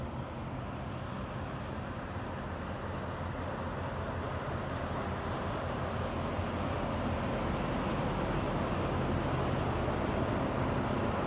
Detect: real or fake real